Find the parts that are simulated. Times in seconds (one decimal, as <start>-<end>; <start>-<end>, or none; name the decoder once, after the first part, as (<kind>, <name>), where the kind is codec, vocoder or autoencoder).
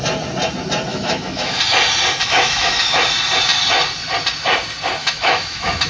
0.9-1.6 (autoencoder, DAC-VAE); 2.2-3.0; 5.0-5.9